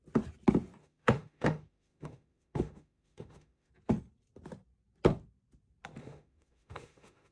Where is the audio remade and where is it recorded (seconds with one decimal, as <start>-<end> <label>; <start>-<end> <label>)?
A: 0.0-0.8 recorded; 0.8-3.7 remade; 3.7-6.0 recorded; 6.0-7.3 remade